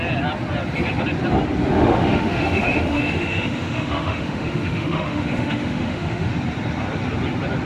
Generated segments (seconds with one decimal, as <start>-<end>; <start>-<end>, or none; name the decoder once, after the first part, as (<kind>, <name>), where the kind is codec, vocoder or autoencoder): 1.7-6.3 (autoencoder, DAC-VAE)